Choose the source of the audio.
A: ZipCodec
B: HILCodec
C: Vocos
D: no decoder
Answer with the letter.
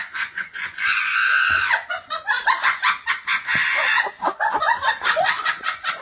C